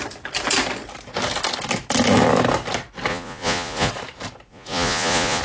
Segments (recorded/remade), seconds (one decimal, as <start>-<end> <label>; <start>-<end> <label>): 0.0-3.1 recorded; 3.1-3.9 remade; 3.9-4.5 recorded; 4.5-5.4 remade